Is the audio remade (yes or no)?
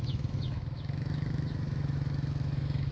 yes